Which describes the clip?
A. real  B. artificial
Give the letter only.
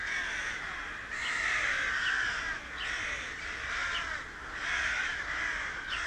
A